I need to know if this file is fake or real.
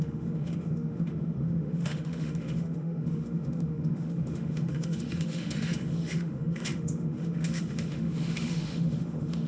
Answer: fake